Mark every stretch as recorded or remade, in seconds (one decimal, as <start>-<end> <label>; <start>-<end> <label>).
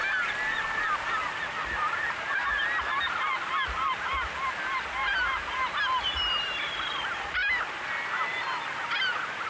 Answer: 0.0-9.5 recorded